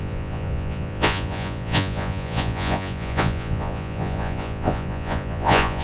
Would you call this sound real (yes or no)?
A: no